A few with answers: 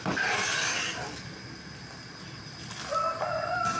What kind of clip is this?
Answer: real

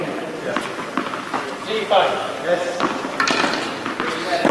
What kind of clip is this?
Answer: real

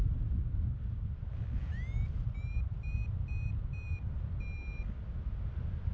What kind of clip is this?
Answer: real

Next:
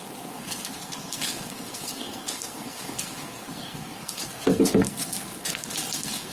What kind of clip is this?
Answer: fake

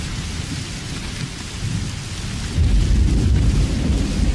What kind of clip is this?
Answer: real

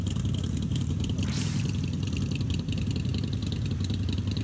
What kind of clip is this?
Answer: fake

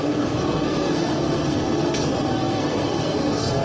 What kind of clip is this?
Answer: fake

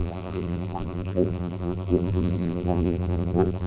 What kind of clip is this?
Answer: fake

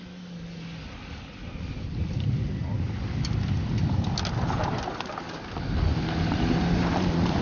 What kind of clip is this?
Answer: real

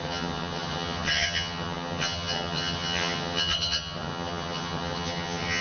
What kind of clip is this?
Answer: fake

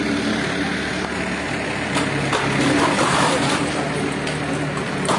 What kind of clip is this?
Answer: real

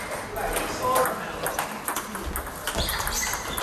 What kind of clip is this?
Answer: real